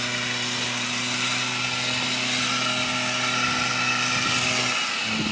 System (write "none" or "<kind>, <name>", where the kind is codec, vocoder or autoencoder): none